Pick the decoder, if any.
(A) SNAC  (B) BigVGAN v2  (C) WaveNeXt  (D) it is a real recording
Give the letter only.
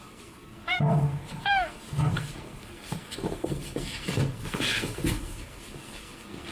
A